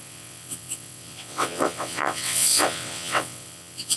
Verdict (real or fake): fake